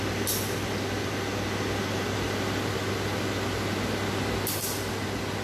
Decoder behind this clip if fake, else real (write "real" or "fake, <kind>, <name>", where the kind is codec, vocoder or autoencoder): real